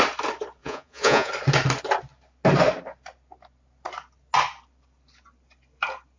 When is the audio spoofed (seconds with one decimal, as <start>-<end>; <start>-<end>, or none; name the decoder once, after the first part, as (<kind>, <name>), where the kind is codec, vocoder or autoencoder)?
0.6-1.3 (vocoder, Vocos)